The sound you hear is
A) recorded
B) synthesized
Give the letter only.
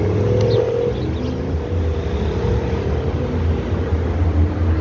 A